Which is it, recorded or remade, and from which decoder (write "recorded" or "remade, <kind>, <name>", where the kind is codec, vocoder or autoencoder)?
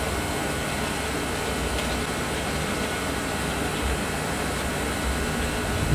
recorded